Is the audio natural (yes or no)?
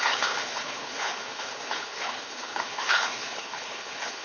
no